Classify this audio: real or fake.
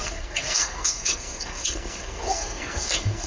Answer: fake